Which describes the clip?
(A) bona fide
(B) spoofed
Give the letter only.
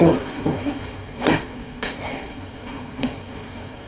B